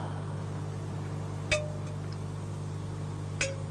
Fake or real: real